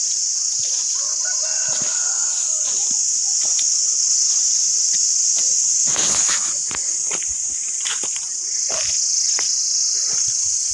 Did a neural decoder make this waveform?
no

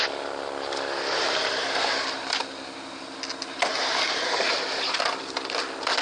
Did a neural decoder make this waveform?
no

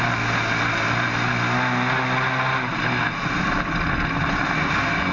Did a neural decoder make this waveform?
no